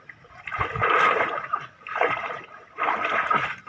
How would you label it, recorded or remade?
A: recorded